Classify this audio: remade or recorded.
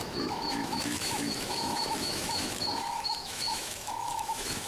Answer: remade